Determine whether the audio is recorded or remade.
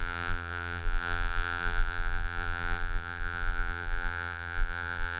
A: remade